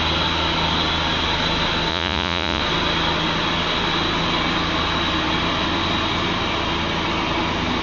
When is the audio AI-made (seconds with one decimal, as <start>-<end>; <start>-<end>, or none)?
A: 1.9-2.6